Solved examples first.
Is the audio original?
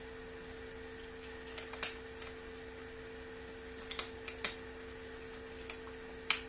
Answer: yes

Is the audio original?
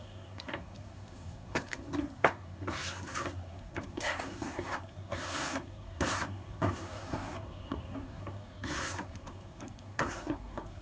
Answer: no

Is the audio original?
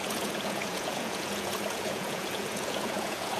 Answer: no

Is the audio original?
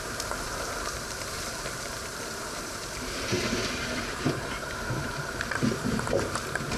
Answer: no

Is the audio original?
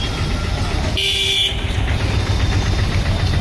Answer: yes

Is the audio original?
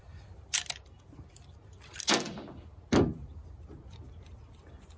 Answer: yes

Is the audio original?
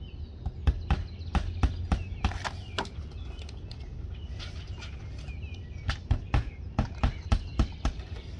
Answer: yes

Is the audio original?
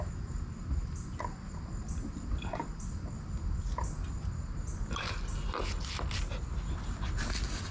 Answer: yes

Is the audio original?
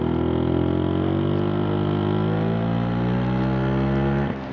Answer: yes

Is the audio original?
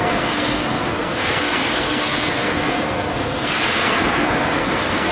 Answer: no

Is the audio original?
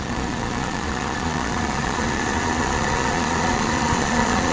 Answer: no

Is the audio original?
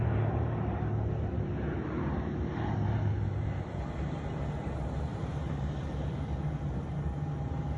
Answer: no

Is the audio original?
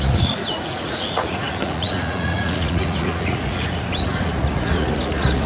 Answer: no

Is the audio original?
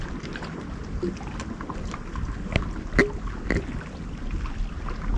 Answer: yes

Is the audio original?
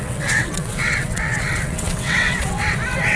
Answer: no